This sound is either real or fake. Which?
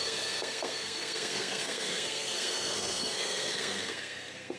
fake